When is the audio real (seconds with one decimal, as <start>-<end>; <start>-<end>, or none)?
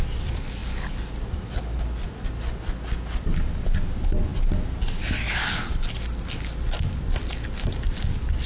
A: 0.0-8.5